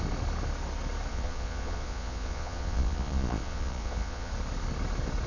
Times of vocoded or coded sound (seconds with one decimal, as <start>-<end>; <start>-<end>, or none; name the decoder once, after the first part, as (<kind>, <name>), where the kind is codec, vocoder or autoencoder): 1.1-4.3 (vocoder, Vocos)